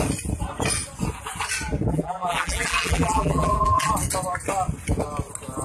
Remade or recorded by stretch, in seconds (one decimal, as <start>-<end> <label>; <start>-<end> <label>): 0.0-1.9 recorded; 1.9-3.9 remade; 3.9-5.6 recorded